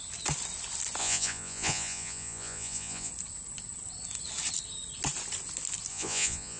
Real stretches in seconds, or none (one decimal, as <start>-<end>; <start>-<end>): 0.0-1.0; 3.1-5.9